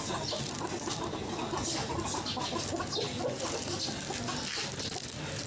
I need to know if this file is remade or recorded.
recorded